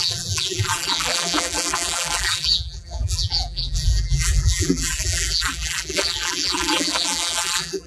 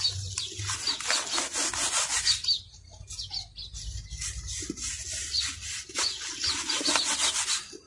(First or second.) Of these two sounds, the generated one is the first